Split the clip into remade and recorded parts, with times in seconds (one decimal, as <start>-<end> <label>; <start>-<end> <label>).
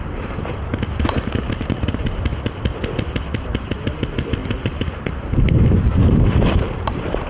0.0-2.3 remade; 2.3-3.4 recorded; 3.4-7.3 remade